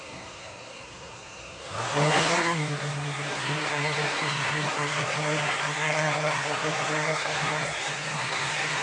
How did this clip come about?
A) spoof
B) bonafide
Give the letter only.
A